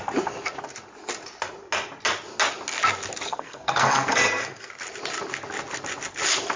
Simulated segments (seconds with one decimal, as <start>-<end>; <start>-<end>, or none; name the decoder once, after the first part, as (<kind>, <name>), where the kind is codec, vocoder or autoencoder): 3.3-4.7 (codec, SNAC)